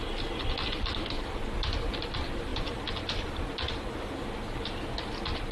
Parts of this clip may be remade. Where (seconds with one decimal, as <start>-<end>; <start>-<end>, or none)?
none